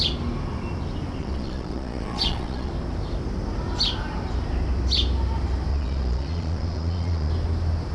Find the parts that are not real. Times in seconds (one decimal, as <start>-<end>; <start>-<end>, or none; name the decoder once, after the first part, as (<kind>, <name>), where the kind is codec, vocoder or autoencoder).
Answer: 1.2-2.7 (vocoder, Vocos); 5.7-7.3